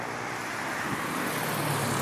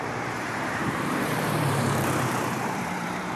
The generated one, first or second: second